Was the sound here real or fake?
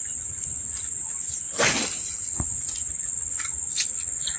real